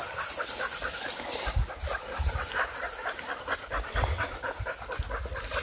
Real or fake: real